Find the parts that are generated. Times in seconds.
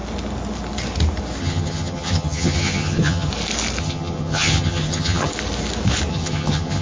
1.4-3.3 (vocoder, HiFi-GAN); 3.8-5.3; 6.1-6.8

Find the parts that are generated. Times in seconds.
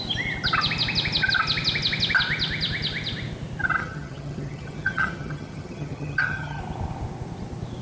3.8-6.6 (vocoder, HiFi-GAN)